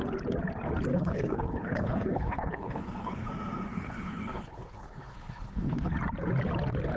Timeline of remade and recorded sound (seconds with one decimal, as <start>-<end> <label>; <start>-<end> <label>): 0.0-0.9 recorded; 0.9-3.3 remade; 3.3-3.7 recorded; 3.7-5.9 remade; 5.9-7.0 recorded